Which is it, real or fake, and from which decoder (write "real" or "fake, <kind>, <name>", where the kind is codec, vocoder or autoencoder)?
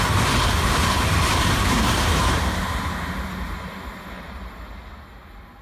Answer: real